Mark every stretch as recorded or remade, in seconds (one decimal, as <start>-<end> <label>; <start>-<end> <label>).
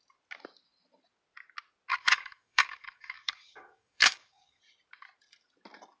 0.0-1.9 recorded; 1.9-4.6 remade; 4.6-6.0 recorded